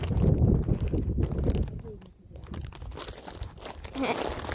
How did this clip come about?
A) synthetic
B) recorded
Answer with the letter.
B